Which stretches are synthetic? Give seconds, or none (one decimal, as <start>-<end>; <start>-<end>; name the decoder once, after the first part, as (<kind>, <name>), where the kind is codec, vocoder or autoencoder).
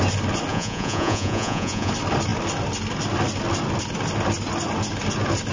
0.5-1.9 (vocoder, Vocos)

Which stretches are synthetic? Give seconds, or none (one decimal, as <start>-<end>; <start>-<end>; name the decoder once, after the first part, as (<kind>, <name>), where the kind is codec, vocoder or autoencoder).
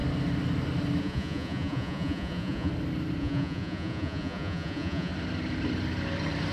1.0-2.7 (vocoder, Vocos); 3.2-5.1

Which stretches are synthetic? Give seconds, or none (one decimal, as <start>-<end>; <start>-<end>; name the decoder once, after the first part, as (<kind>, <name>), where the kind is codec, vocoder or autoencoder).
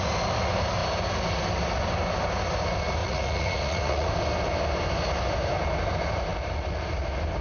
3.0-4.1 (vocoder, Vocos)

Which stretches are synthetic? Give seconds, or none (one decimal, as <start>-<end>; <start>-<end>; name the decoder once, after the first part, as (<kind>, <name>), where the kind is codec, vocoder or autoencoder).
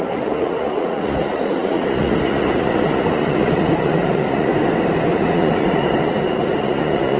0.0-4.5 (vocoder, Vocos); 5.1-7.2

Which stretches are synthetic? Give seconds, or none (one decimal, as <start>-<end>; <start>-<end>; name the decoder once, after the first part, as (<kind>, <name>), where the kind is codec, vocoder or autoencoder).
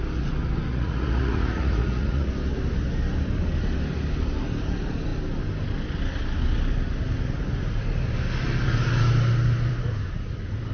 0.7-2.3 (vocoder, Vocos)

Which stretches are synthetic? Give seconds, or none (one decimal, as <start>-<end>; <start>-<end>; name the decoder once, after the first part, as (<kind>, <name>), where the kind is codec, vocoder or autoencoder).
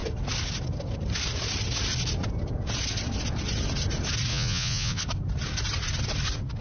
4.3-5.0 (vocoder, Vocos)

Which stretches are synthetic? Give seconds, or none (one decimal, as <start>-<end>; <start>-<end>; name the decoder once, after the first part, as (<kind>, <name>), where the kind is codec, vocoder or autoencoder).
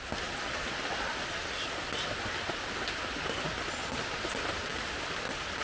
none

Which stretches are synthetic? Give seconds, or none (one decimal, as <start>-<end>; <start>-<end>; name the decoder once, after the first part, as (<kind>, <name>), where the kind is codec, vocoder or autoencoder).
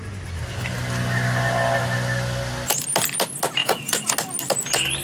3.6-4.1 (vocoder, Vocos)